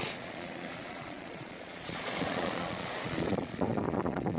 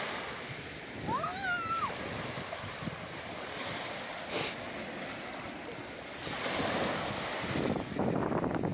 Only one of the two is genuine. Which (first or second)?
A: second